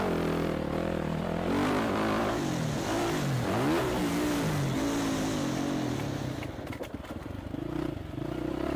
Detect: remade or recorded recorded